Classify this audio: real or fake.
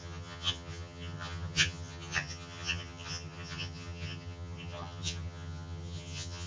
fake